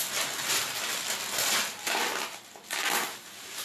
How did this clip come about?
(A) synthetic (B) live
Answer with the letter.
B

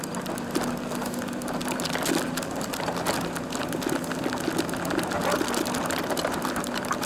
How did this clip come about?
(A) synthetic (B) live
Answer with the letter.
B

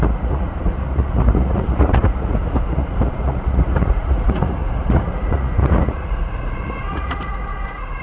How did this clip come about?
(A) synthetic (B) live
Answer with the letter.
A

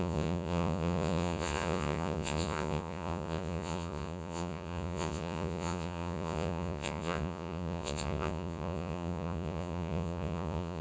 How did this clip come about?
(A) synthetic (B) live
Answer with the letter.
A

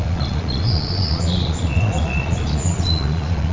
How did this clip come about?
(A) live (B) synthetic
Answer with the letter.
B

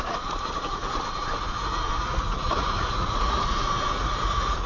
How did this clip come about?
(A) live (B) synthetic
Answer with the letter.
B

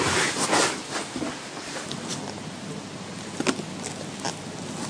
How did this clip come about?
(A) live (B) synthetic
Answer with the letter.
A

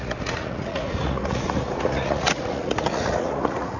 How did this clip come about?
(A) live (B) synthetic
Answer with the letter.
B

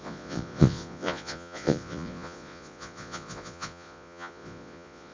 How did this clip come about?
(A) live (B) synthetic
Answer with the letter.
B